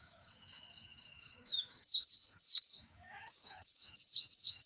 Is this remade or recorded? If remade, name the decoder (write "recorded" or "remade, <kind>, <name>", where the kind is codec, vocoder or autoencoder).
remade, autoencoder, DAC-VAE